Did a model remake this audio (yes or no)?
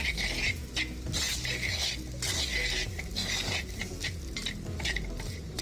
no